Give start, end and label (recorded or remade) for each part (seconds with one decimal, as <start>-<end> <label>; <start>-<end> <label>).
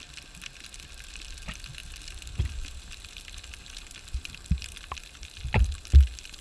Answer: 0.0-6.4 recorded